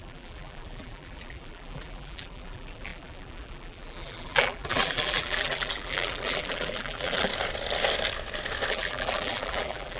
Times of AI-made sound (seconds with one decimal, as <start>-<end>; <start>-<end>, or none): 0.0-7.3; 8.7-10.0